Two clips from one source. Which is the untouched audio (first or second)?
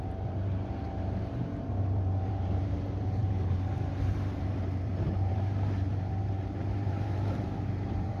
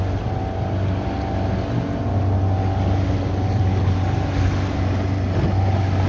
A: second